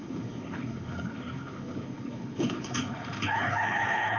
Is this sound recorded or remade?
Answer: remade